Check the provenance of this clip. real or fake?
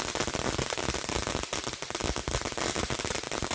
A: real